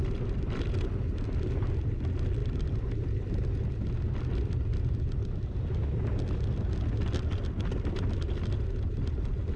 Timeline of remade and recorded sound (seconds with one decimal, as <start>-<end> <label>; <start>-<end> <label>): 0.0-9.6 recorded